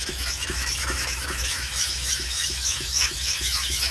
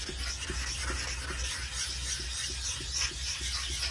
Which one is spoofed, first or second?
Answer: first